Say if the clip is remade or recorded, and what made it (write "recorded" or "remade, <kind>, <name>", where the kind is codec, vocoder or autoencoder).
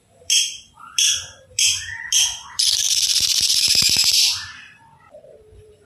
remade, vocoder, BigVGAN v2